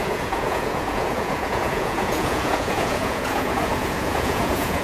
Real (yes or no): no